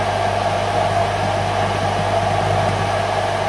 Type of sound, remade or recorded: recorded